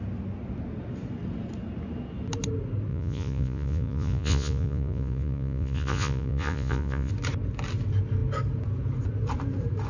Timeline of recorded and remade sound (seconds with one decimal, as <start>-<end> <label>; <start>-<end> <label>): 0.0-2.9 recorded; 2.9-7.1 remade; 7.1-9.9 recorded